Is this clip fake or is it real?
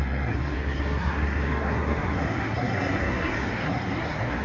fake